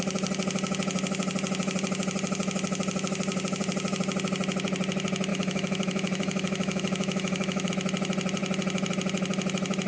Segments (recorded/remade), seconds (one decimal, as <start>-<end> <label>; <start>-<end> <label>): 0.0-5.3 recorded; 5.3-7.7 remade; 7.7-9.9 recorded